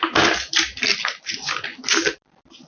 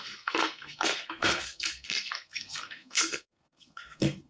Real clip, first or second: first